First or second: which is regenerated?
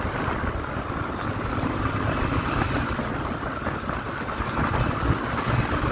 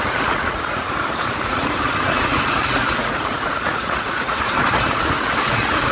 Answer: second